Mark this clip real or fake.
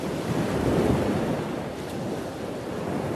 fake